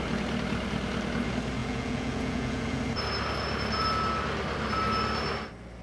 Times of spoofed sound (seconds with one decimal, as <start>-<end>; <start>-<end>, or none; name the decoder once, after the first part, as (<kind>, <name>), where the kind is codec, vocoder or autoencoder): 1.6-2.8 (vocoder, Vocos)